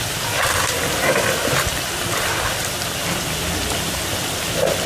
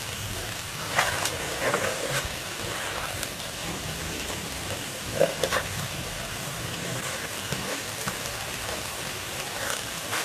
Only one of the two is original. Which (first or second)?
first